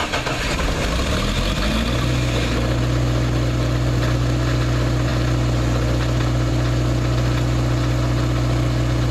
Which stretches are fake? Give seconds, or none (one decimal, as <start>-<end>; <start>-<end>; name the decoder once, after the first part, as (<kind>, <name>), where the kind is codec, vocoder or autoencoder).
none